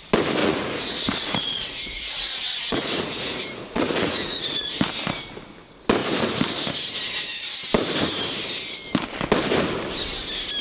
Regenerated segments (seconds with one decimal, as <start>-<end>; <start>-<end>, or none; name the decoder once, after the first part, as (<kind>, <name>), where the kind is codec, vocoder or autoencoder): 0.4-4.8 (vocoder, Vocos)

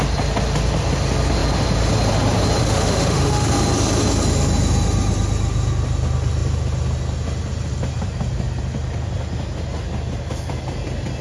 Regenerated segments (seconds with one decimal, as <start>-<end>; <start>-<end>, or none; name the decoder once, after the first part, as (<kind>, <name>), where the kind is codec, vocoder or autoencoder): 2.6-3.5 (autoencoder, DAC-VAE)